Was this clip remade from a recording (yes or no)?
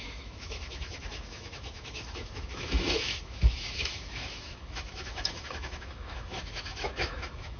yes